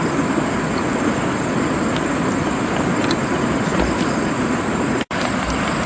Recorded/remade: recorded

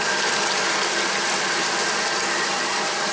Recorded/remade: recorded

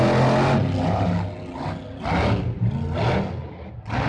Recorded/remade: recorded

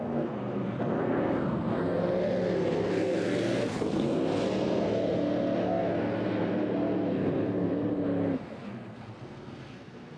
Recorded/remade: remade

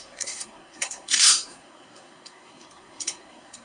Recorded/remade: remade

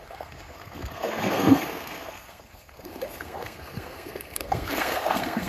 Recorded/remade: remade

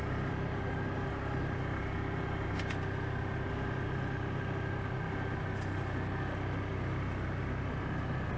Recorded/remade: recorded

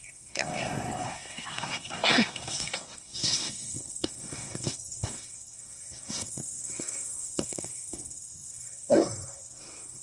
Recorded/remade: remade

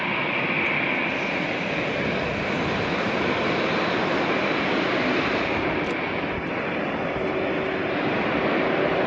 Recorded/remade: recorded